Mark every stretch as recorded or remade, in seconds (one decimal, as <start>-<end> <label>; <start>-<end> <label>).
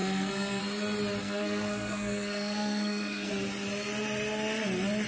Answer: 0.0-0.6 remade; 0.6-1.2 recorded; 1.2-3.3 remade; 3.3-5.1 recorded